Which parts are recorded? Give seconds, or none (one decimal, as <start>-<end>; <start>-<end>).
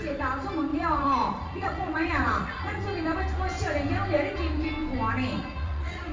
0.0-0.7; 2.8-5.3